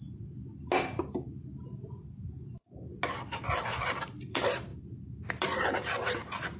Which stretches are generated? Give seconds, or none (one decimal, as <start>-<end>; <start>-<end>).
0.0-0.4; 3.8-4.7; 5.3-6.6